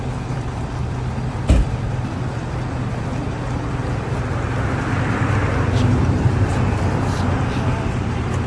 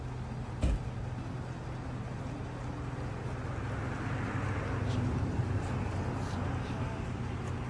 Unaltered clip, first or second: second